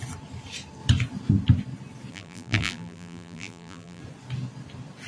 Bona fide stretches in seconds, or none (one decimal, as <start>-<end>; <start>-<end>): 0.0-2.1; 4.0-5.1